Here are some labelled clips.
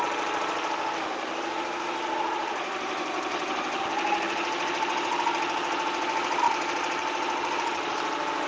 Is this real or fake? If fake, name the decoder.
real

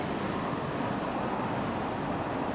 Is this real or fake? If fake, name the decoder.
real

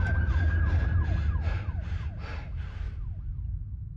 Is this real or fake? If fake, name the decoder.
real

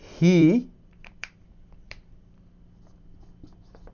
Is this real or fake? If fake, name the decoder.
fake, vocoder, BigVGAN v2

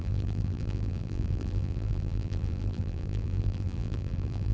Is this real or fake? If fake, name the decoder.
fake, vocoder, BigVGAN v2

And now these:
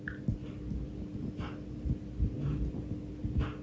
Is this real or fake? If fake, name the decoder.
real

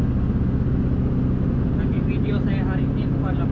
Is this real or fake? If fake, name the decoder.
real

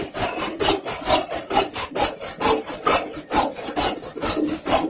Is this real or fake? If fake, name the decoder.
real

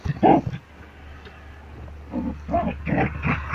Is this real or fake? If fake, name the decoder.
real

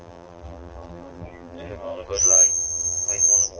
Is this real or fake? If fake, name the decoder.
fake, vocoder, BigVGAN v2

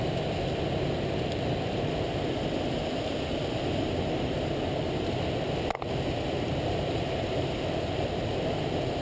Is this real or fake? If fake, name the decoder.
fake, vocoder, BigVGAN v2